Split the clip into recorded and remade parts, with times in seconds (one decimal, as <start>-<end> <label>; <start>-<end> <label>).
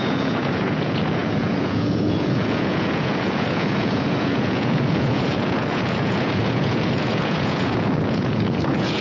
0.0-9.0 remade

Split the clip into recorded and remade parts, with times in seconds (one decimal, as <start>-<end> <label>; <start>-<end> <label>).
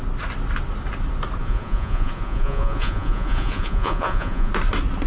0.0-1.4 recorded; 1.4-4.5 remade; 4.5-5.1 recorded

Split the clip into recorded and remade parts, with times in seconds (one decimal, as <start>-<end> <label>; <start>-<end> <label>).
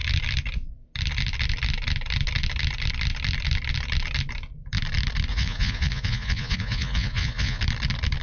0.0-5.3 recorded; 5.3-7.6 remade; 7.6-8.2 recorded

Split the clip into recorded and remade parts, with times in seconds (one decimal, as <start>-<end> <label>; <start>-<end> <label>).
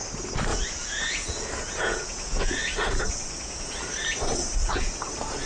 0.0-0.5 recorded; 0.5-3.8 remade; 3.8-4.6 recorded; 4.6-5.5 remade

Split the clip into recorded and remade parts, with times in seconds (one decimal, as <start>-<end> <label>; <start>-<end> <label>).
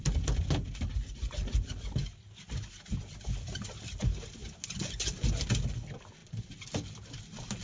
0.0-7.6 recorded